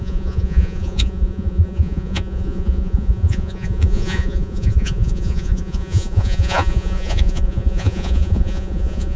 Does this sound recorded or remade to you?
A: remade